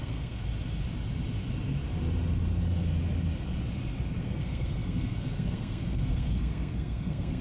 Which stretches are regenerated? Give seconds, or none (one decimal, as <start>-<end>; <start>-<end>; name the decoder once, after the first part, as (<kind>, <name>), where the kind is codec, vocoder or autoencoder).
0.0-0.4 (codec, SNAC); 4.2-7.4

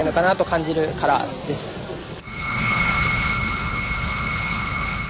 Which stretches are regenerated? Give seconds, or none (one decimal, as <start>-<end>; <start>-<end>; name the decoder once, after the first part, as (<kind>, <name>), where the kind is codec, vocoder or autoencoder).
2.0-5.1 (codec, HILCodec)

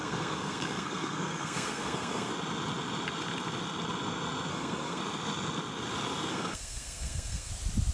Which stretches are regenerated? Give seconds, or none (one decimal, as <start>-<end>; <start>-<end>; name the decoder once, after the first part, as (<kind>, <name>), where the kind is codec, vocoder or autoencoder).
0.0-2.3 (codec, SNAC); 4.5-5.0; 6.3-7.5

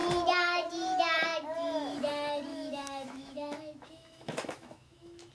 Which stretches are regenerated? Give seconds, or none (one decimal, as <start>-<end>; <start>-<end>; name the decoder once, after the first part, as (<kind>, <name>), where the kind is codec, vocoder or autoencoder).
2.5-5.3 (autoencoder, DAC-VAE)

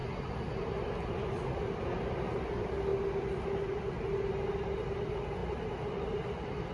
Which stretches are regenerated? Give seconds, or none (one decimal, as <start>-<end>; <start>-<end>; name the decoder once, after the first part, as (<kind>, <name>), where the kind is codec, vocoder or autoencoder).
none